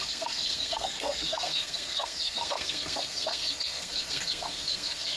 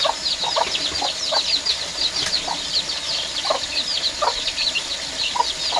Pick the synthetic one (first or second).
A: first